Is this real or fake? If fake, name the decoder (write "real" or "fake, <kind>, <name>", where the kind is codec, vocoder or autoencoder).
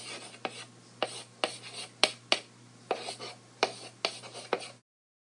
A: real